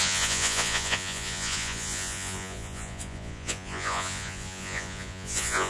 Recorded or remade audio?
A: remade